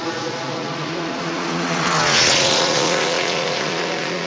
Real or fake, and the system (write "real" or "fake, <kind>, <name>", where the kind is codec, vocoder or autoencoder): fake, vocoder, Vocos